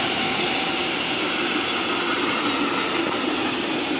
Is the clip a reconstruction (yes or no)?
no